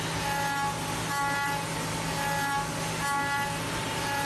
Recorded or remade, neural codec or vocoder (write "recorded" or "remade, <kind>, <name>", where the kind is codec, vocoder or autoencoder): recorded